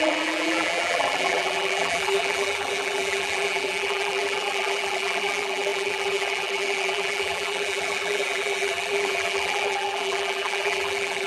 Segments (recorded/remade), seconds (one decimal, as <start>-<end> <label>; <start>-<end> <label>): 0.0-11.3 remade